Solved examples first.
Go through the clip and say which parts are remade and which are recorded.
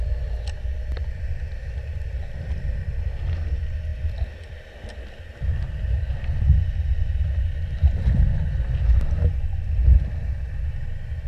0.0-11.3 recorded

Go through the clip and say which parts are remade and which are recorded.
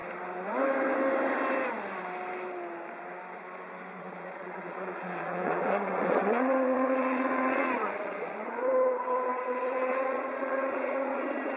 0.0-4.0 recorded; 4.0-11.6 remade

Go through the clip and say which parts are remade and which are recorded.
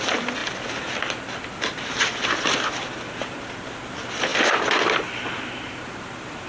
0.0-6.5 recorded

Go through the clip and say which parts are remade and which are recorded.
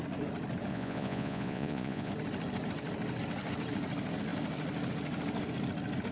0.0-0.7 recorded; 0.7-2.1 remade; 2.1-6.1 recorded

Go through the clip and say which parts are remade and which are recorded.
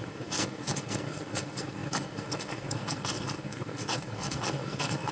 0.0-5.1 remade